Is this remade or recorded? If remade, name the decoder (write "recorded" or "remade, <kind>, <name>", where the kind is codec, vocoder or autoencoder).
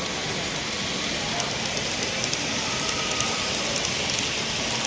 recorded